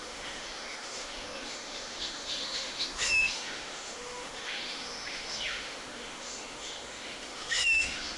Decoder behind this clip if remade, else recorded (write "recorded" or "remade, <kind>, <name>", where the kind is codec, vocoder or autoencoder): remade, autoencoder, DAC-VAE